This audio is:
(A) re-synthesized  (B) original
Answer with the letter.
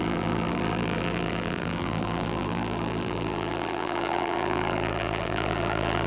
A